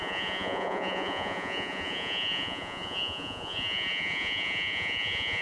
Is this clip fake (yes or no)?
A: yes